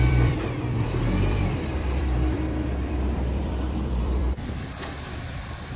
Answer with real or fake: fake